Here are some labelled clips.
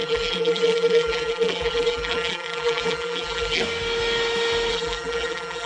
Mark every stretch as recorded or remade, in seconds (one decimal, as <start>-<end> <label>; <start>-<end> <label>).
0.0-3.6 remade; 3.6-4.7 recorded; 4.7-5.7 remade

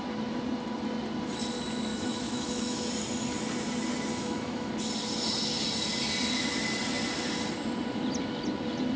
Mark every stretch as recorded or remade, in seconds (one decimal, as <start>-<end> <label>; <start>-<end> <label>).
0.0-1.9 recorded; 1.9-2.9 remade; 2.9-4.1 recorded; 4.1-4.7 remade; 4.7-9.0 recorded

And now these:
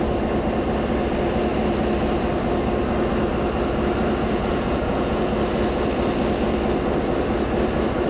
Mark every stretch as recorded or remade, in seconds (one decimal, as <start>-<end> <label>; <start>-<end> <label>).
0.0-4.2 recorded; 4.2-5.2 remade; 5.2-8.1 recorded

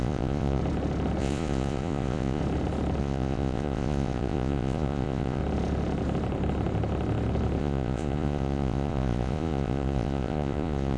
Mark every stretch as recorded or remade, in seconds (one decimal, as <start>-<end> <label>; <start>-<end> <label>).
0.0-0.6 remade; 0.6-1.2 recorded; 1.2-2.4 remade; 2.4-3.0 recorded; 3.0-5.4 remade; 5.4-7.6 recorded; 7.6-11.0 remade

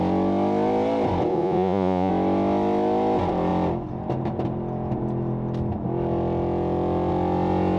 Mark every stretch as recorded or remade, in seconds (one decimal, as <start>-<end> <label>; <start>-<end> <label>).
0.0-1.3 recorded; 1.3-2.1 remade; 2.1-7.8 recorded